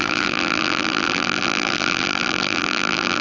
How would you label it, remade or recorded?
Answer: remade